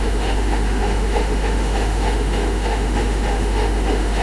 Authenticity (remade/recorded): remade